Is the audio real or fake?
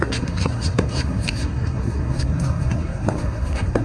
fake